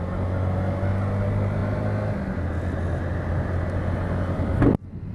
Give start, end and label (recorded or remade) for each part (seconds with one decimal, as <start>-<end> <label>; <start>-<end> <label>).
0.0-5.1 recorded